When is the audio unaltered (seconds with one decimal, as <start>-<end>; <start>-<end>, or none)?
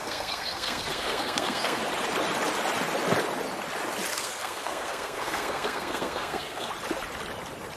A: 1.8-4.1; 6.7-7.8